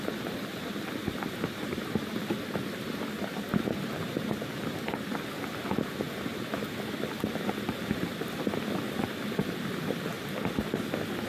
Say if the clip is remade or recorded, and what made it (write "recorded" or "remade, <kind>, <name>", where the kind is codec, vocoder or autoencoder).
recorded